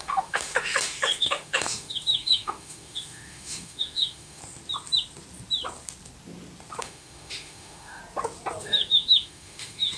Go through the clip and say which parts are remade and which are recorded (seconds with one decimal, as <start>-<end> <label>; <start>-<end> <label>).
0.0-4.4 remade; 4.4-6.8 recorded; 6.8-8.0 remade; 8.0-8.6 recorded; 8.6-10.0 remade